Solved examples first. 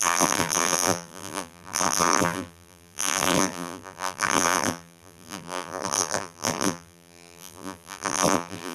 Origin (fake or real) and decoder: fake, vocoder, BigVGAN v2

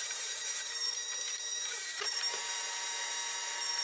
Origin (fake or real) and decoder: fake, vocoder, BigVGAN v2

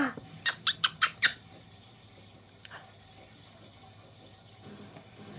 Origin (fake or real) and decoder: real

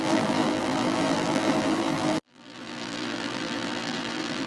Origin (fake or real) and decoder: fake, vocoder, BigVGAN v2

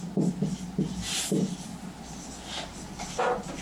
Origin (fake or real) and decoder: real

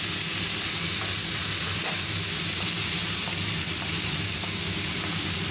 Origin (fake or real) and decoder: real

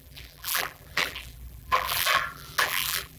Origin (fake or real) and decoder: fake, vocoder, BigVGAN v2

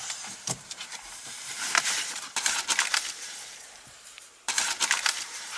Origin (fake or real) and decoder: fake, vocoder, BigVGAN v2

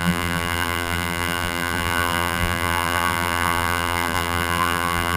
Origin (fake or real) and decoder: fake, vocoder, BigVGAN v2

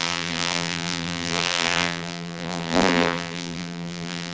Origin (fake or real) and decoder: fake, vocoder, BigVGAN v2